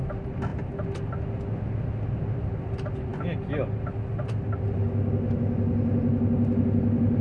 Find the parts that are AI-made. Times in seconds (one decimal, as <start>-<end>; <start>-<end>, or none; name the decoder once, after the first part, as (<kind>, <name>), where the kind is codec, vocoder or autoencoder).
none